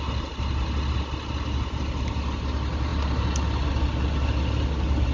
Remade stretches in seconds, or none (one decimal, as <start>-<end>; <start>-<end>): none